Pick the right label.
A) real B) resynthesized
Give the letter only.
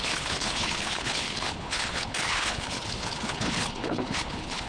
B